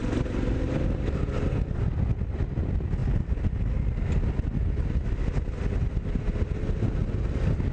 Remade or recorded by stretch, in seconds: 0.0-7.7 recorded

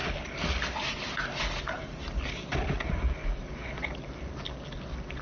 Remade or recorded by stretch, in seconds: 0.0-5.2 recorded

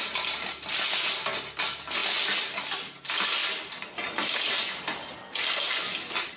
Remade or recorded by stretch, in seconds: 0.0-6.4 recorded

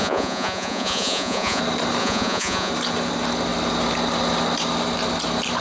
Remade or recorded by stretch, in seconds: 0.0-1.6 remade; 1.6-2.0 recorded; 2.0-2.7 remade; 2.7-5.6 recorded

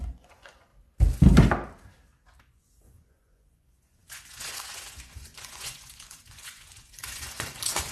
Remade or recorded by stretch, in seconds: 0.0-0.7 remade; 0.7-2.4 recorded; 2.4-7.9 remade

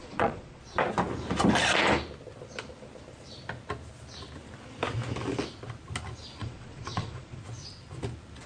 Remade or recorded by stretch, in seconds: 0.0-0.6 remade; 0.6-6.4 recorded; 6.4-7.4 remade; 7.4-8.5 recorded

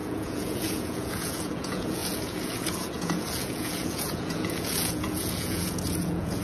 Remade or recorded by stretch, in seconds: 0.0-6.4 remade

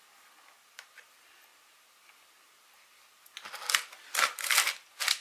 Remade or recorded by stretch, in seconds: 0.0-5.2 recorded